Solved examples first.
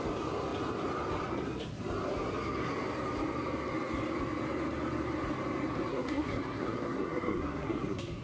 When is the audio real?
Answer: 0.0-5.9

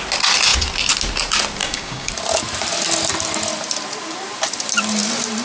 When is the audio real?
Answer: 0.0-1.6; 2.1-5.4

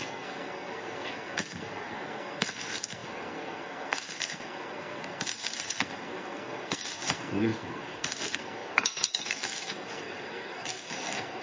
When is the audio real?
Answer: none

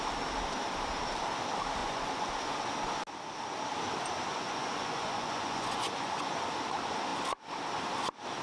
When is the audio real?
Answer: 0.0-1.8; 2.3-4.3; 6.3-8.4

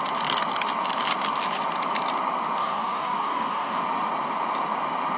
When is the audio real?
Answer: 0.0-2.6; 3.8-5.2